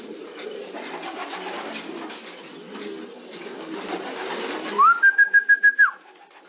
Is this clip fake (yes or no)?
no